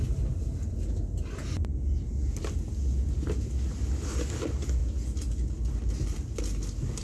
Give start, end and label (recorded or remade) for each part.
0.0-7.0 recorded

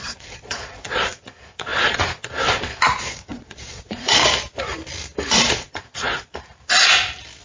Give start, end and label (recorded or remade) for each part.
0.0-4.2 remade; 4.2-5.3 recorded; 5.3-6.3 remade; 6.3-7.4 recorded

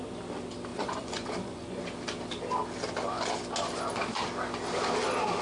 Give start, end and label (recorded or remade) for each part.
0.0-0.7 recorded; 0.7-1.8 remade; 1.8-5.4 recorded